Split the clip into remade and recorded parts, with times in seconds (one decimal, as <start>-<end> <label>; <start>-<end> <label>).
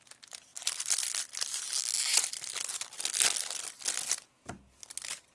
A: 0.0-5.3 recorded